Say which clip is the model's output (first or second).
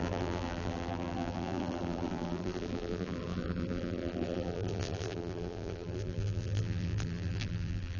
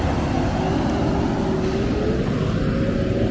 first